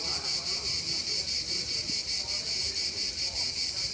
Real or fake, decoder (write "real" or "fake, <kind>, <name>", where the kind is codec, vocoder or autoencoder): real